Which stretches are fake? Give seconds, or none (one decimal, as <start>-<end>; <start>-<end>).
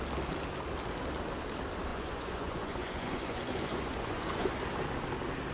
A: 1.9-4.5